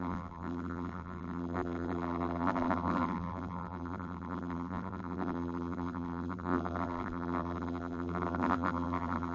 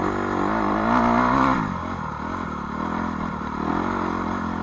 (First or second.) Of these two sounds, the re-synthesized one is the first